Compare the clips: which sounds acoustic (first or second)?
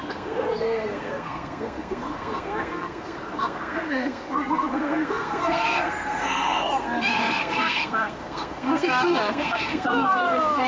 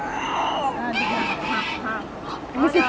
second